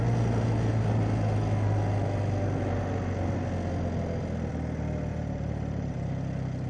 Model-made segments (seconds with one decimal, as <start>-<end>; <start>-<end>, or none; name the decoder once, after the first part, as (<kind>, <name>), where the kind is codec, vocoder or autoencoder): 5.1-6.1 (vocoder, BigVGAN v2)